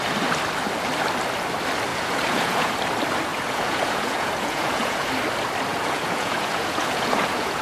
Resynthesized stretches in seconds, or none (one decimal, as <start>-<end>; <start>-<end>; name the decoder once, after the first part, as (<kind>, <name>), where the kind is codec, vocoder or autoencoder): 1.9-2.7 (vocoder, Vocos); 3.3-5.1; 5.7-7.6